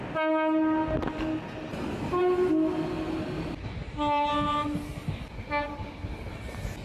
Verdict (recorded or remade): recorded